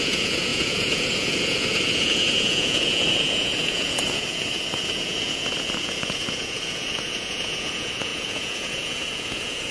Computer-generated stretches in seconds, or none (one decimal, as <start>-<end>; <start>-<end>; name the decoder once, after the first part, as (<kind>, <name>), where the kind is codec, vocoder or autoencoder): 0.0-9.7 (vocoder, Vocos)